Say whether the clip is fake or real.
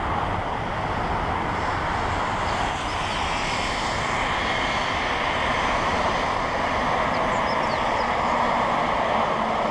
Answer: real